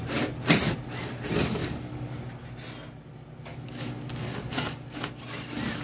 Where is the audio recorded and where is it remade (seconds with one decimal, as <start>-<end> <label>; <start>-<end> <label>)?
0.0-1.6 recorded; 1.6-2.2 remade; 2.2-3.5 recorded; 3.5-5.0 remade; 5.0-5.8 recorded